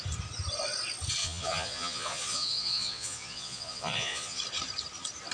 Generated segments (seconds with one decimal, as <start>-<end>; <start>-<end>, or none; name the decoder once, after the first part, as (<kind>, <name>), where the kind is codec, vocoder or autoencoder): 1.2-4.4 (vocoder, Vocos)